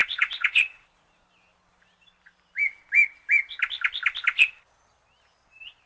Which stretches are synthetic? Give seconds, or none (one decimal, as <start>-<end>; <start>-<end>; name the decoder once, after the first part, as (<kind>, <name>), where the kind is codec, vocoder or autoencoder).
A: 0.0-1.2 (vocoder, Vocos)